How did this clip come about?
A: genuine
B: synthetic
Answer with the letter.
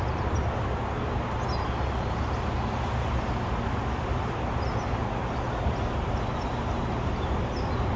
A